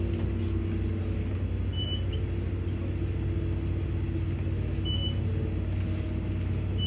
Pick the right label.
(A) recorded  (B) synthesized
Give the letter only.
A